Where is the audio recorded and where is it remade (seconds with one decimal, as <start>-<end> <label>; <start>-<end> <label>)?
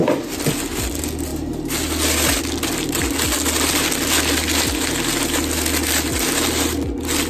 0.0-7.3 recorded